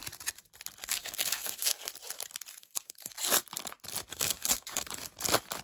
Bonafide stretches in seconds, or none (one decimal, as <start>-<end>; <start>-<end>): 0.0-0.8; 1.9-2.5; 3.1-4.1; 4.9-5.6